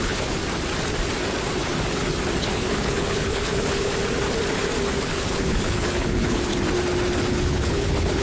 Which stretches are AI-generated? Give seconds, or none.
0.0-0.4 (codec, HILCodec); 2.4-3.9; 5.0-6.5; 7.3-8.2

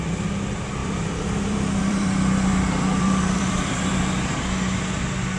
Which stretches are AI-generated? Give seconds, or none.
0.8-4.0 (vocoder, BigVGAN v2)

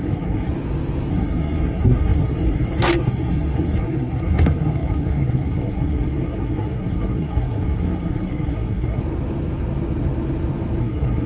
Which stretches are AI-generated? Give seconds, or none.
0.0-0.5 (codec, SNAC); 1.1-9.0; 10.8-11.3

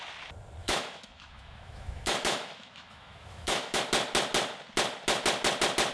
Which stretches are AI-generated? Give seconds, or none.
0.6-3.8 (autoencoder, DAC-VAE)

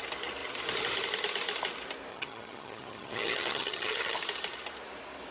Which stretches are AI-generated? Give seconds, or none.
2.1-4.2 (vocoder, HiFi-GAN)